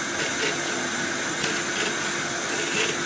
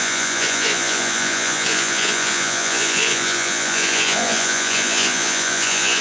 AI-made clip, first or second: second